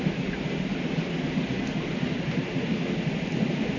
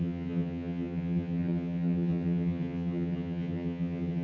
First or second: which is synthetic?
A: second